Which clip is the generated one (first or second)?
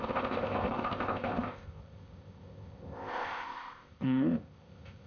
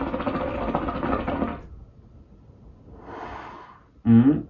first